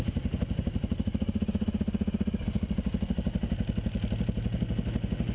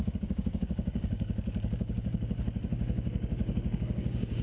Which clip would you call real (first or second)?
first